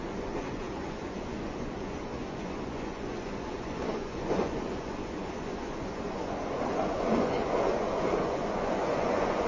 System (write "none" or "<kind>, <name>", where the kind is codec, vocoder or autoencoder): vocoder, Vocos